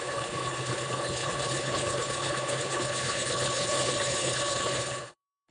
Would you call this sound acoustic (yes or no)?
no